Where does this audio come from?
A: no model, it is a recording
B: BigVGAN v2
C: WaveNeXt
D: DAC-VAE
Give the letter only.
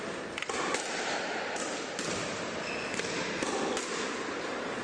A